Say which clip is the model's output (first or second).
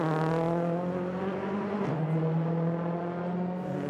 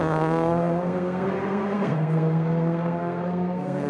second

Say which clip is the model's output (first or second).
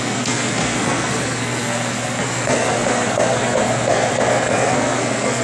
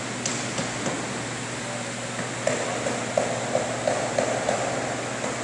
first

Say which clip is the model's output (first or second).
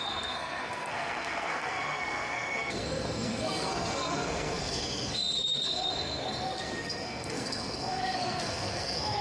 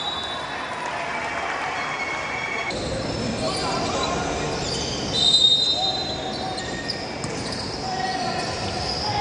first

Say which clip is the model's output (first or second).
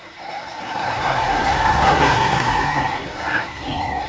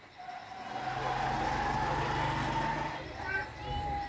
first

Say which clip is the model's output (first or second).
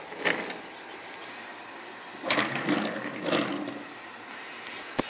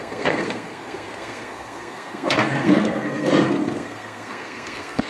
second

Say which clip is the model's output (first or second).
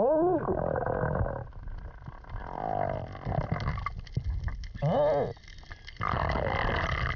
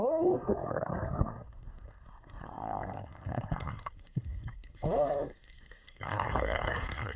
second